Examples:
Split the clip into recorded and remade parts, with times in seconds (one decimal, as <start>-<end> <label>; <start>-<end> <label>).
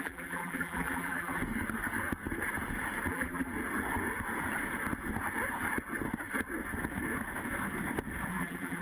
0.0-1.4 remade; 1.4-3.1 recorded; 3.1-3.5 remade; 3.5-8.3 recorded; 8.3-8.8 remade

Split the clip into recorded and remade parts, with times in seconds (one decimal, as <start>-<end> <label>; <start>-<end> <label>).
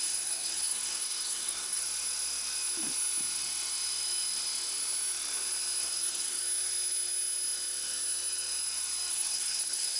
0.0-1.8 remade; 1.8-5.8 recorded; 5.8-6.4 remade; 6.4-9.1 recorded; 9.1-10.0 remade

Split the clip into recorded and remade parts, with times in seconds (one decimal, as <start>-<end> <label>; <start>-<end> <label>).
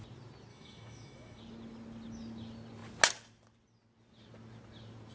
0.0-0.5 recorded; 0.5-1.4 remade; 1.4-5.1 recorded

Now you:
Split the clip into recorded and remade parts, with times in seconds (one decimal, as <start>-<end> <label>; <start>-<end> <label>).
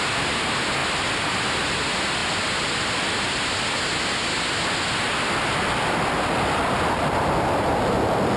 0.0-8.4 recorded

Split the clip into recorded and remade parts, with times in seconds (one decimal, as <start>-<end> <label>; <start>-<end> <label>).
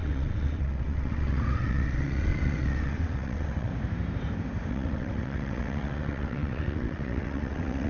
0.0-3.7 remade; 3.7-4.7 recorded; 4.7-7.9 remade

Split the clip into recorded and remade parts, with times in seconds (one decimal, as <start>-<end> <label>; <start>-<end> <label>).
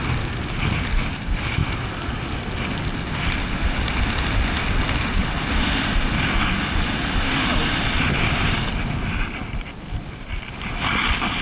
0.0-11.4 recorded